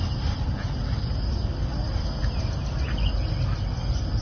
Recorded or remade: recorded